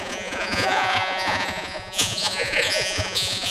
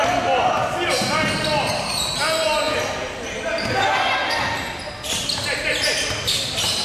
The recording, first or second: second